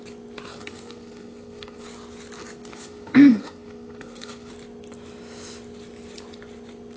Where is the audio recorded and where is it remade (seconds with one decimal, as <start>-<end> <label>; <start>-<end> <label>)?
0.0-0.5 recorded; 0.5-1.8 remade; 1.8-2.4 recorded; 2.4-4.5 remade; 4.5-7.0 recorded